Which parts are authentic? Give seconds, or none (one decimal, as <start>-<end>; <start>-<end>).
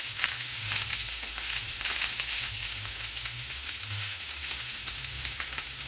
none